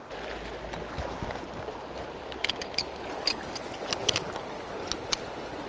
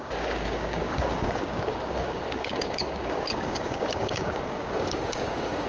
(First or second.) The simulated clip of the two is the second